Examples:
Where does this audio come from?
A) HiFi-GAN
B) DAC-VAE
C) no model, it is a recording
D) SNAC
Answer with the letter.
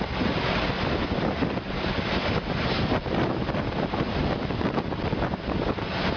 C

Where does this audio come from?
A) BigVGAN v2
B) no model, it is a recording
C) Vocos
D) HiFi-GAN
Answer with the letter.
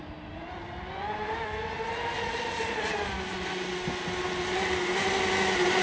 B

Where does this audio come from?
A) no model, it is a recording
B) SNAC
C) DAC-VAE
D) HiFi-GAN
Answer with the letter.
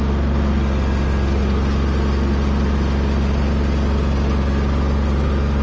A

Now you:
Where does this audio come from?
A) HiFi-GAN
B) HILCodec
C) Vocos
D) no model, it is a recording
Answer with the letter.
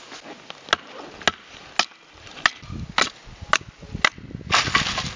D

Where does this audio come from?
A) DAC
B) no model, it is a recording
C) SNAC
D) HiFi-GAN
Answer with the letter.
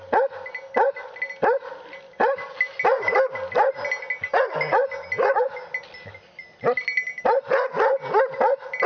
B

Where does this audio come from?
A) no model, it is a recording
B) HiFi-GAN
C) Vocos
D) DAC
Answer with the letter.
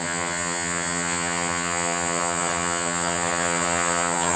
B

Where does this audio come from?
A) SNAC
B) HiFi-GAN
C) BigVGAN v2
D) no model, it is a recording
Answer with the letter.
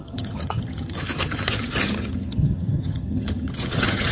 B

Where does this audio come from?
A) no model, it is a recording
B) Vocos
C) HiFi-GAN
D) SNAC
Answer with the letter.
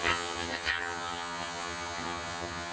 C